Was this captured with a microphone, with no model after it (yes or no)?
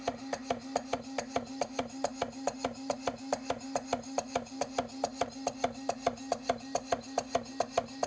yes